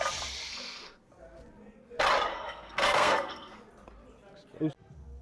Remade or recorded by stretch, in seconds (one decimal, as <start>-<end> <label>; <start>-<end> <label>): 0.0-0.5 recorded; 0.5-1.1 remade; 1.1-2.3 recorded; 2.3-3.6 remade; 3.6-5.2 recorded